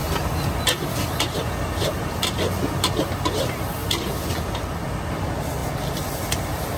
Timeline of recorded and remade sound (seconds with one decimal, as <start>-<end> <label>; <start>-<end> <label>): 0.0-6.8 recorded

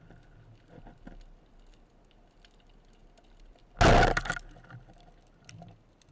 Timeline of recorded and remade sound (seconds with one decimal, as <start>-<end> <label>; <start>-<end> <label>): 0.0-6.1 recorded

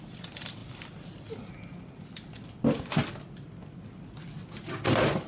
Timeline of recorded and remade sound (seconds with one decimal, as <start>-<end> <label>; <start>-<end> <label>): 0.0-5.3 recorded

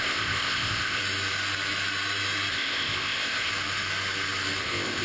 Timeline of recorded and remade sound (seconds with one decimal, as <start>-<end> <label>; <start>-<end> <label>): 0.0-1.0 remade; 1.0-2.5 recorded; 2.5-3.5 remade; 3.5-4.6 recorded; 4.6-5.0 remade

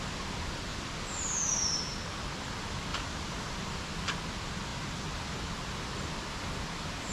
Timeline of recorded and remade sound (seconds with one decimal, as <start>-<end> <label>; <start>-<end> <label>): 0.0-0.7 recorded; 0.7-1.8 remade; 1.8-2.9 recorded; 2.9-3.7 remade; 3.7-7.1 recorded

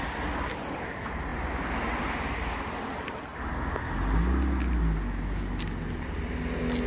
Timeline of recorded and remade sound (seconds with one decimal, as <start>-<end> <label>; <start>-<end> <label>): 0.0-6.9 recorded